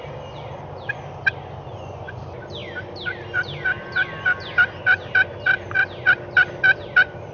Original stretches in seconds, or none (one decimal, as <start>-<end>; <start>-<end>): 0.0-1.7; 2.2-7.3